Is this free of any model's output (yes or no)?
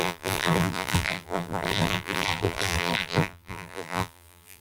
no